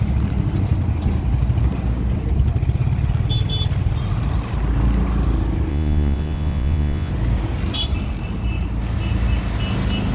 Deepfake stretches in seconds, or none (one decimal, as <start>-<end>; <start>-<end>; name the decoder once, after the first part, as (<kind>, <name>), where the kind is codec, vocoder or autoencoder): 5.7-7.1 (vocoder, Vocos)